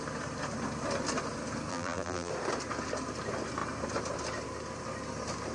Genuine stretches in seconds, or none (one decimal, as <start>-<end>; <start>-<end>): 0.0-1.7; 2.3-5.5